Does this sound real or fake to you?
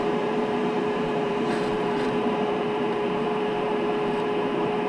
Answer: fake